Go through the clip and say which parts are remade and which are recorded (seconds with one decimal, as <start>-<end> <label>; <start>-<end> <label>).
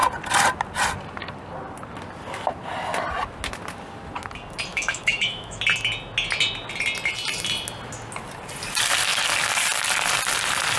0.0-4.7 recorded; 4.7-5.6 remade; 5.6-10.8 recorded